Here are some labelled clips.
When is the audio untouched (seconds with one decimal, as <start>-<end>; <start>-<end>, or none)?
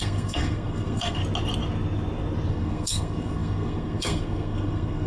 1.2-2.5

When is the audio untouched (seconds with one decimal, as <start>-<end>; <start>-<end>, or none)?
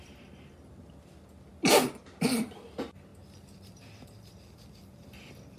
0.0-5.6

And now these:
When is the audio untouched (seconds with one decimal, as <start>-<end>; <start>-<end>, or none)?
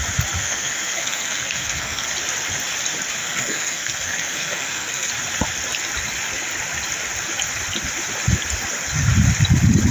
0.0-0.4; 2.1-3.2; 5.1-9.9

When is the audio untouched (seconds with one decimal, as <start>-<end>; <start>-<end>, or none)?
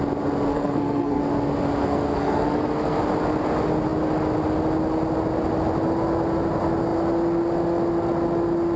0.0-0.5; 1.2-1.8; 3.0-8.8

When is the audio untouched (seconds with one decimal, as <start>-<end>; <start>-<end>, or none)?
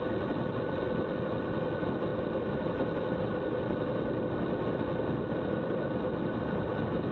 0.0-7.1